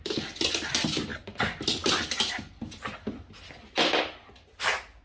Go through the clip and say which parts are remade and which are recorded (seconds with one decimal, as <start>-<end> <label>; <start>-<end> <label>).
0.0-5.0 recorded